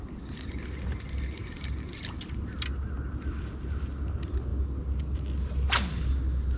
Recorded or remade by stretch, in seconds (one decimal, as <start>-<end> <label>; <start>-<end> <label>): 0.0-6.6 recorded